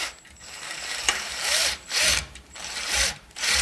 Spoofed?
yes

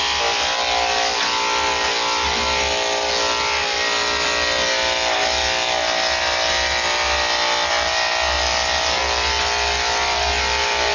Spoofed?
no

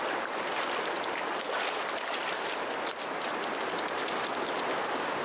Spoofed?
no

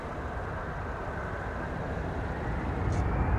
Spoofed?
no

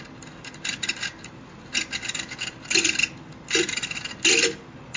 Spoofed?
no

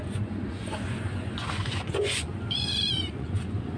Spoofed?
yes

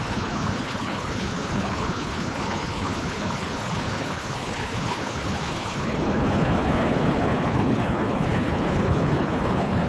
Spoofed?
yes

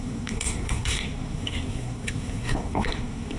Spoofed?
yes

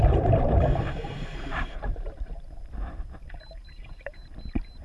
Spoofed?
yes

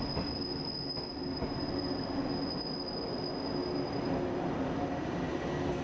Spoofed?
no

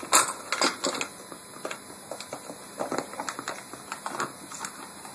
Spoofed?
no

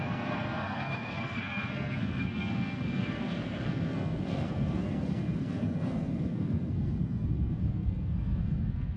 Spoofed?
yes